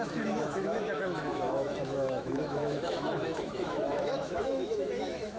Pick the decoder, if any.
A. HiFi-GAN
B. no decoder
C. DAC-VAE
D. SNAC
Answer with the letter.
C